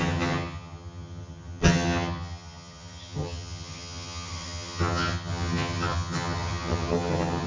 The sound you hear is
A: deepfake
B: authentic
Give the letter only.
A